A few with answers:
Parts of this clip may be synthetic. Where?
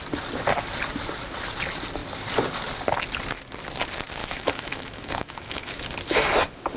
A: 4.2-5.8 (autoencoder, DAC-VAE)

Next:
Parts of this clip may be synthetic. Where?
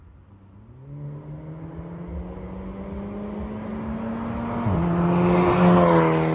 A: none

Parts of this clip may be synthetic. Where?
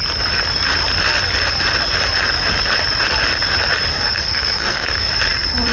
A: 3.9-5.1 (codec, SNAC)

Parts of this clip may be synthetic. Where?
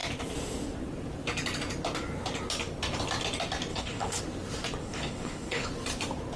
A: 3.7-4.2 (codec, HILCodec); 4.8-5.7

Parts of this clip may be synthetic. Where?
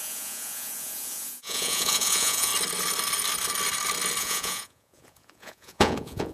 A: 0.0-2.5 (vocoder, Vocos); 4.2-6.3